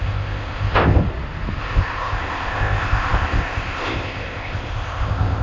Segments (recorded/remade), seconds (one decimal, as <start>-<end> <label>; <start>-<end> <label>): 0.0-1.0 remade; 1.0-1.6 recorded; 1.6-5.4 remade